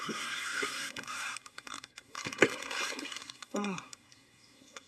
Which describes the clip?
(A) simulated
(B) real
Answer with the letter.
A